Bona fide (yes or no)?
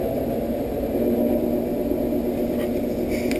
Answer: yes